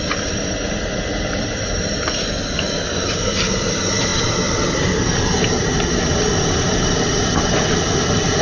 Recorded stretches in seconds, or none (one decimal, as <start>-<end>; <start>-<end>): 0.0-8.4